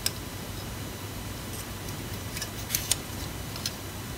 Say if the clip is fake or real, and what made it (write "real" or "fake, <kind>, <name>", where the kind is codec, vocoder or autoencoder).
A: real